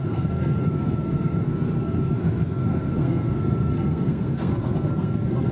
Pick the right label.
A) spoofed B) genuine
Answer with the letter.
A